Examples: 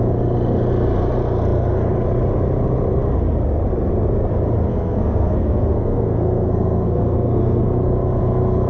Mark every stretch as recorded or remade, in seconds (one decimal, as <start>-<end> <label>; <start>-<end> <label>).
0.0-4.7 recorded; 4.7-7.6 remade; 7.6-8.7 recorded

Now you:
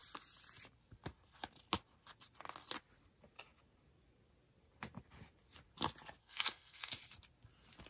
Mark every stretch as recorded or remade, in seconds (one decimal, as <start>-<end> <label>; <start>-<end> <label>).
0.0-6.2 recorded; 6.2-6.9 remade; 6.9-7.9 recorded

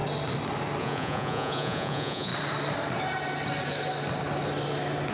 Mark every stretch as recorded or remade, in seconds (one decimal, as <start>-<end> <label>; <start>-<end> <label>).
0.0-0.8 recorded; 0.8-2.3 remade; 2.3-5.1 recorded

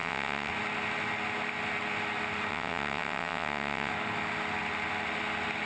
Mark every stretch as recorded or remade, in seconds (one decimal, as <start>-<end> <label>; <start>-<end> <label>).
0.0-0.5 remade; 0.5-2.5 recorded; 2.5-3.9 remade; 3.9-5.7 recorded

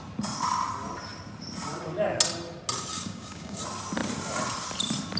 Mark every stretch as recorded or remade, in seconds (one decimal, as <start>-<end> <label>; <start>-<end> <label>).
0.0-2.9 recorded; 2.9-3.6 remade; 3.6-5.2 recorded